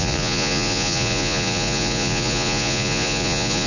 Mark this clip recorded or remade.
remade